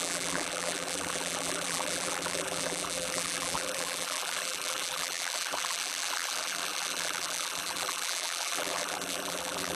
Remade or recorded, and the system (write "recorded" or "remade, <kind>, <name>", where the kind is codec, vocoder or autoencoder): remade, vocoder, BigVGAN v2